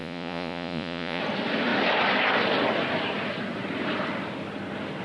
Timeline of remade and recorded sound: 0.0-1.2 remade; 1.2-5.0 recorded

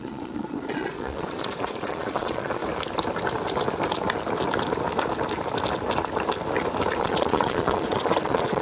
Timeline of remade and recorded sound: 0.0-2.6 remade; 2.6-7.0 recorded; 7.0-8.6 remade

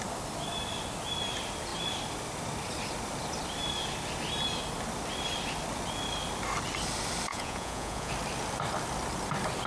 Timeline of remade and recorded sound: 0.0-7.3 recorded; 7.3-8.1 remade; 8.1-9.7 recorded

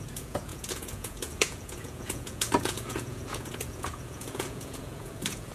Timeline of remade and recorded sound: 0.0-5.5 remade

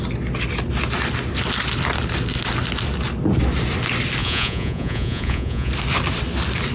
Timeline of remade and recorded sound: 0.0-4.2 recorded; 4.2-5.7 remade; 5.7-6.7 recorded

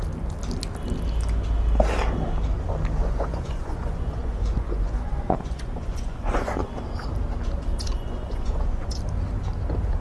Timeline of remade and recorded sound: 0.0-3.0 recorded; 3.0-6.7 remade; 6.7-7.7 recorded; 7.7-9.0 remade; 9.0-10.0 recorded

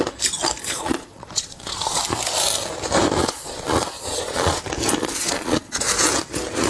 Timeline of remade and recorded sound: 0.0-0.6 recorded; 0.6-2.0 remade; 2.0-3.2 recorded; 3.2-4.6 remade; 4.6-5.0 recorded; 5.0-5.8 remade; 5.8-6.7 recorded